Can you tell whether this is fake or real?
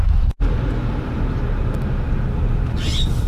real